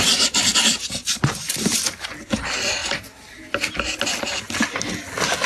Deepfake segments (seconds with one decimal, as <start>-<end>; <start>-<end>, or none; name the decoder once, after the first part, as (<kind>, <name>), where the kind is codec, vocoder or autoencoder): none